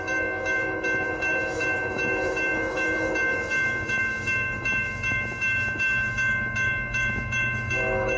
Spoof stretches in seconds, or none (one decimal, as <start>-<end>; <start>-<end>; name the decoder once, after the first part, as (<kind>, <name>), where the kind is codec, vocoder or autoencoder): 0.0-8.2 (autoencoder, DAC-VAE)